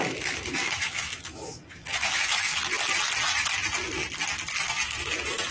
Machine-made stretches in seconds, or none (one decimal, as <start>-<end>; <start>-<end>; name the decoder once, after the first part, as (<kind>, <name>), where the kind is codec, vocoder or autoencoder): 0.0-2.5 (autoencoder, DAC-VAE); 4.7-5.5